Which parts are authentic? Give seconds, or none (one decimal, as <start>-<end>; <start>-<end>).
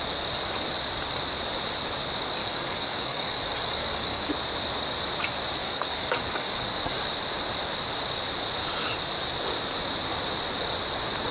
0.0-2.4; 4.3-5.6; 6.7-11.3